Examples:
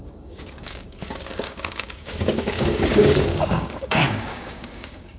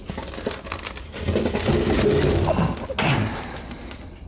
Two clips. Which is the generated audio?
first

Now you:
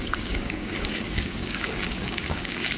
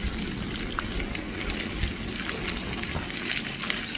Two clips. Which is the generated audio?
first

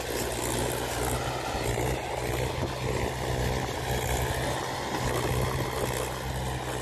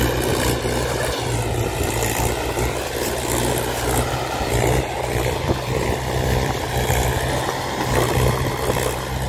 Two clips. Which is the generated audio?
second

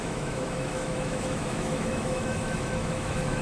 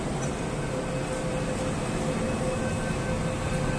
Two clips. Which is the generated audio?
first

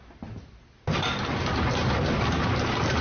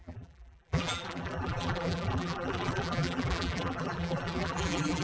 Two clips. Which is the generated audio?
second